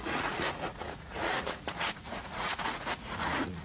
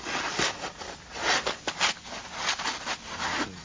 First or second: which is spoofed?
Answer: first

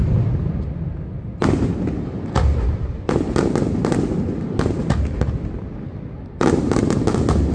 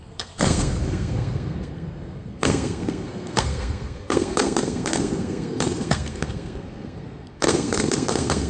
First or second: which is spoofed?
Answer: second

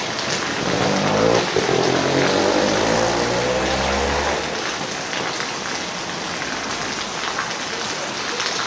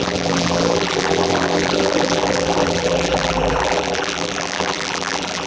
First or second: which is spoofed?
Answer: second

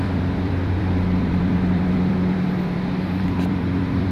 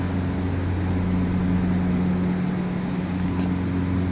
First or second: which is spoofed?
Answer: first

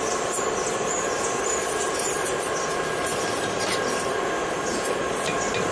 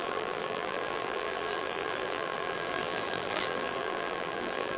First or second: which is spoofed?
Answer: second